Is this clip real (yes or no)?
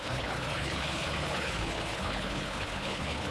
no